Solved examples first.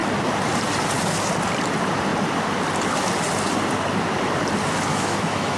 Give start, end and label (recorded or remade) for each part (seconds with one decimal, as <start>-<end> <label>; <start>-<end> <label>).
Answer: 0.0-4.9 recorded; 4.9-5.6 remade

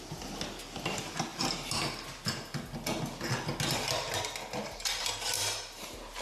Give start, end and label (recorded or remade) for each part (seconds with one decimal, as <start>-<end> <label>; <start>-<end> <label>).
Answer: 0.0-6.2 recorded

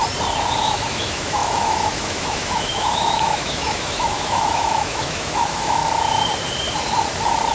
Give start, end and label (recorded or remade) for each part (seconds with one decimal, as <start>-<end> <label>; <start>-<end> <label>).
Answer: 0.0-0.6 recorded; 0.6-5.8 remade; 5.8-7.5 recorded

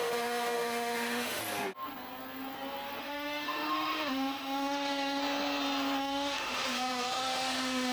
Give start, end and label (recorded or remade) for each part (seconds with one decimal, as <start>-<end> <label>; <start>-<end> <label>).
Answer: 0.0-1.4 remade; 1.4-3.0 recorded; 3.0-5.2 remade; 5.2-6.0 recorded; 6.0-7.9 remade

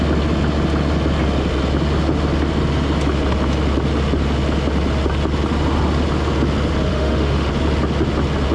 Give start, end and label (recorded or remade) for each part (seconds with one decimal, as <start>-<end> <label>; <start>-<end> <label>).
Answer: 0.0-6.9 recorded; 6.9-7.5 remade; 7.5-8.5 recorded

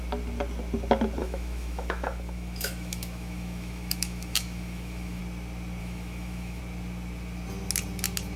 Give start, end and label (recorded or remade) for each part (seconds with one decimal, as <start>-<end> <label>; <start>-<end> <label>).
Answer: 0.0-1.2 recorded; 1.2-5.2 remade; 5.2-5.8 recorded; 5.8-6.6 remade; 6.6-8.4 recorded